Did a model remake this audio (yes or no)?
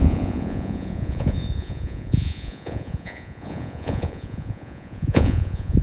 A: yes